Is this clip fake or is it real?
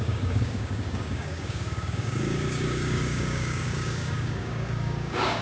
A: fake